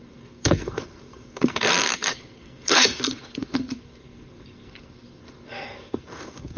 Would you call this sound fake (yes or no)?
yes